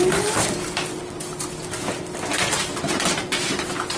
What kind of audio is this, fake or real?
real